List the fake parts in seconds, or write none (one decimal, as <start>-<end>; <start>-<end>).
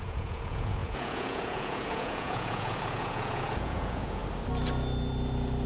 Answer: 0.0-4.2